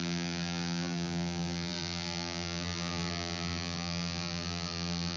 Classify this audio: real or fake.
fake